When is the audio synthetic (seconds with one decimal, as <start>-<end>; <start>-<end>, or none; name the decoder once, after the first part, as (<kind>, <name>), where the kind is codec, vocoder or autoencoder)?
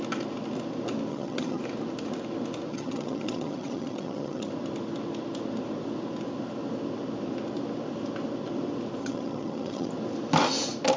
1.1-1.6 (vocoder, HiFi-GAN); 2.7-4.5; 9.0-9.9